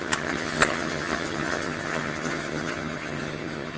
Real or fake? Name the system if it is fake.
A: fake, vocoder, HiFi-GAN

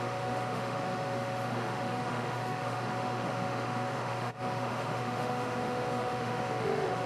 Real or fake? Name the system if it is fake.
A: fake, autoencoder, DAC-VAE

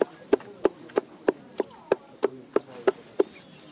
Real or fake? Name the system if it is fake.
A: real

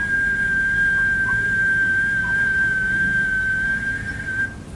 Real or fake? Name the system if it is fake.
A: real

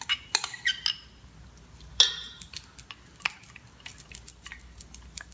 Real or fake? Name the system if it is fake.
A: real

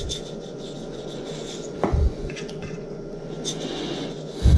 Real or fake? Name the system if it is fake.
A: fake, vocoder, Vocos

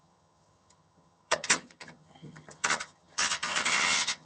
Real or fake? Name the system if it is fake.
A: fake, vocoder, HiFi-GAN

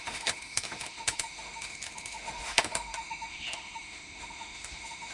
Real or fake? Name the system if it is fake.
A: fake, autoencoder, DAC-VAE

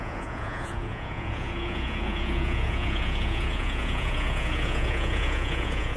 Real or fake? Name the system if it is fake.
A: fake, vocoder, Vocos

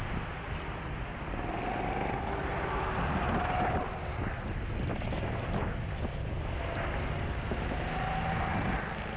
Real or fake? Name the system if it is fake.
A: real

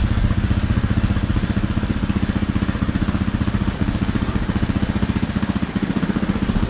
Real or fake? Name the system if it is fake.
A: fake, vocoder, BigVGAN v2